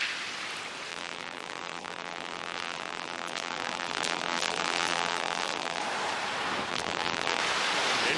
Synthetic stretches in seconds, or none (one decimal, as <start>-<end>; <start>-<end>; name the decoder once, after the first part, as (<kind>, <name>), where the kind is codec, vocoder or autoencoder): 0.9-5.8 (vocoder, BigVGAN v2); 6.7-7.4